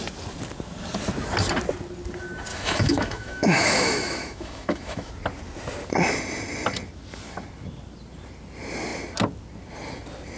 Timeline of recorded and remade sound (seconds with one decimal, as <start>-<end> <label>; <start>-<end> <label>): 0.0-2.5 recorded; 2.5-5.1 remade; 5.1-10.4 recorded